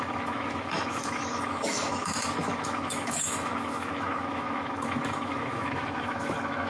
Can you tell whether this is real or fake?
fake